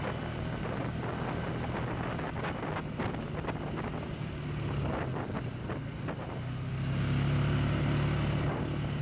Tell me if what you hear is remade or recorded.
recorded